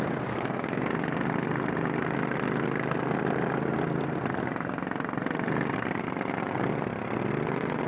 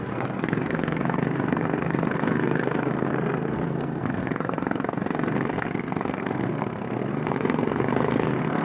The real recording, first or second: first